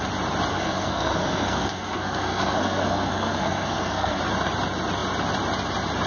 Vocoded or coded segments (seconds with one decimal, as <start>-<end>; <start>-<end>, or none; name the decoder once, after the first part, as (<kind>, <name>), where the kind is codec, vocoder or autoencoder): 0.5-4.2 (codec, SNAC)